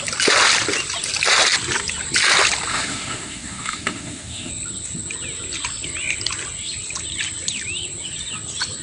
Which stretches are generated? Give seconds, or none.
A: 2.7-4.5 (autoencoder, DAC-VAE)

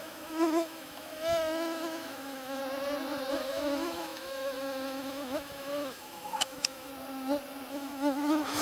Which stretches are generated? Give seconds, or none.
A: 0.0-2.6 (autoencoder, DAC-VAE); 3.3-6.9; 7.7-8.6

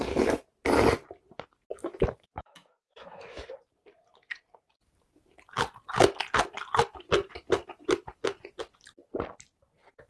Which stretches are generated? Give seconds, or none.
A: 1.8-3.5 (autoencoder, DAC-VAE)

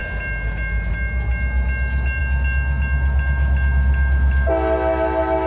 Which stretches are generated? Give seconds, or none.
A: none